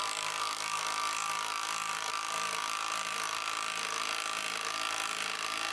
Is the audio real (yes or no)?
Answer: no